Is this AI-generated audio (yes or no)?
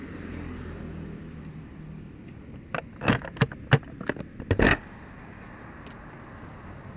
no